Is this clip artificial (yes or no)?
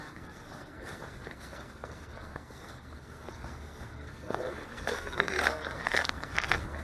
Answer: yes